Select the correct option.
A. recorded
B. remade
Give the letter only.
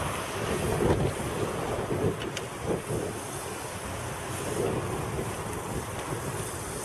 A